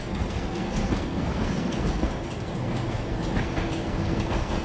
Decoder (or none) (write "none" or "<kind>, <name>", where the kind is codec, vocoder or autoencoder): codec, SNAC